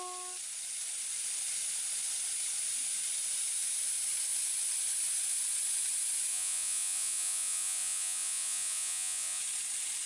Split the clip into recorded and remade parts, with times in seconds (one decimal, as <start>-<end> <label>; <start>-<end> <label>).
0.0-6.3 recorded; 6.3-9.4 remade; 9.4-10.1 recorded